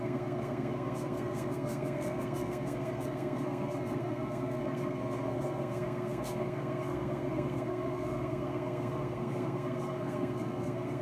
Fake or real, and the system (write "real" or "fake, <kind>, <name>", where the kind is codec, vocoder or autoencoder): fake, codec, SNAC